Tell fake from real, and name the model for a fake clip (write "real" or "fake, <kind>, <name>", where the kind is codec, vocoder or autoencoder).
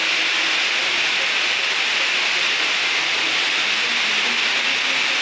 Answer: real